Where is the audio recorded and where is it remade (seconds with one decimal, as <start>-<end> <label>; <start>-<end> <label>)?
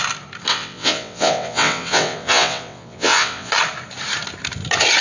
0.0-0.5 recorded; 0.5-3.5 remade; 3.5-5.0 recorded